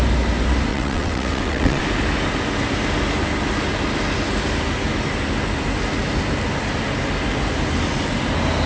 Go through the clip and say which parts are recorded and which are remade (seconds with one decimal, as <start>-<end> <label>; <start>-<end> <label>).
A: 0.0-0.7 recorded; 0.7-1.8 remade; 1.8-8.7 recorded